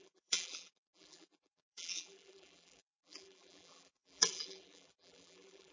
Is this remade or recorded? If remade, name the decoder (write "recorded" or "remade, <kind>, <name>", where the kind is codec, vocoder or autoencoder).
remade, vocoder, BigVGAN v2